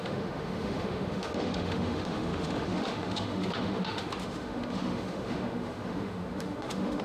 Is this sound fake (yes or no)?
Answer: yes